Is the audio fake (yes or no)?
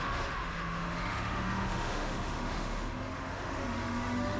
yes